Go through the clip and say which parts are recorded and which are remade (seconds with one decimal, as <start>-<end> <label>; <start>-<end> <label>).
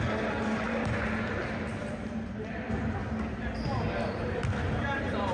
0.0-3.0 remade; 3.0-4.0 recorded; 4.0-5.3 remade